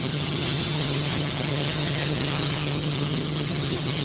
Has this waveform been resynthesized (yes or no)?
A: yes